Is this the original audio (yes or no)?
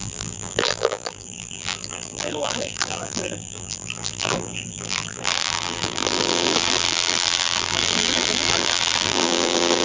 no